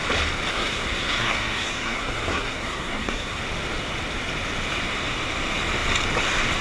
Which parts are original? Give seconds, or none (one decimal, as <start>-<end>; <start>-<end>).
0.0-0.5; 3.4-6.6